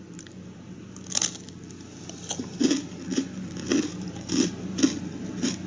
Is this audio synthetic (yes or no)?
no